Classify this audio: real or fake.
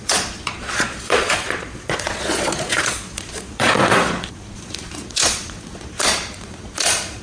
fake